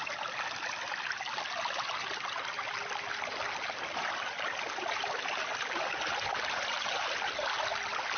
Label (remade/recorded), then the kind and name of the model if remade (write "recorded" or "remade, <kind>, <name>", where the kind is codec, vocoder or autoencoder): recorded